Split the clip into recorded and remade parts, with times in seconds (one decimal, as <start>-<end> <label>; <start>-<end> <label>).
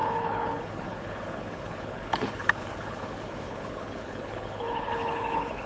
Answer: 0.0-5.7 remade